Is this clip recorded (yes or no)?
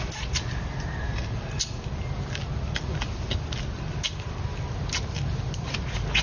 yes